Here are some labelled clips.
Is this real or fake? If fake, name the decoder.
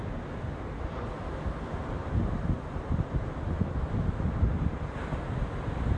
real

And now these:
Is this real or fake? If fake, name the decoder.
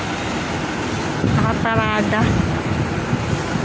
real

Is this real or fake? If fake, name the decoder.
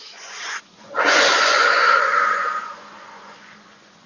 fake, vocoder, Vocos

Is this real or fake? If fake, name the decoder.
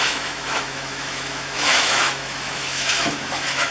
fake, autoencoder, DAC-VAE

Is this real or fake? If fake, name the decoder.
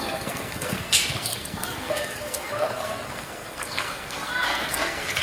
fake, codec, SNAC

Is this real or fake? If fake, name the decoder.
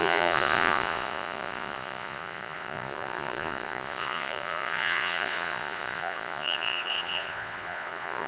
fake, vocoder, Vocos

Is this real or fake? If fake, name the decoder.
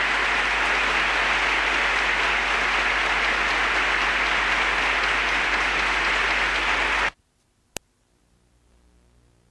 real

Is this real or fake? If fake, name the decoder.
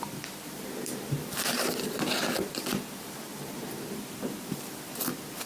fake, vocoder, BigVGAN v2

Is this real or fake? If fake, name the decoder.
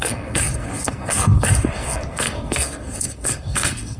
fake, codec, SNAC